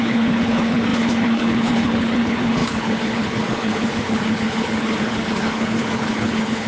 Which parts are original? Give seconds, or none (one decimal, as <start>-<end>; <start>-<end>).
none